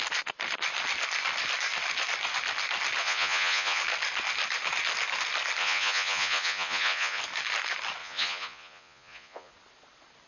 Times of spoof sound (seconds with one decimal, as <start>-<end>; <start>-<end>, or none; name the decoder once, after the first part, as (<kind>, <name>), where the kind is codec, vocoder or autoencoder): 3.0-3.8 (vocoder, Vocos); 5.6-7.2; 8.0-9.5